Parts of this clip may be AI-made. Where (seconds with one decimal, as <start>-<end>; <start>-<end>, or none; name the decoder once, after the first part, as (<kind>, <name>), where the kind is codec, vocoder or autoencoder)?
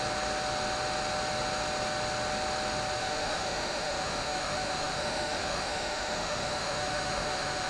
3.0-7.7 (autoencoder, DAC-VAE)